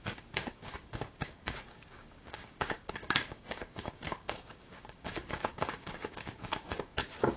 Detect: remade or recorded remade